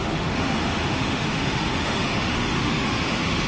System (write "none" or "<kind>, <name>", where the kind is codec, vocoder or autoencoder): autoencoder, DAC-VAE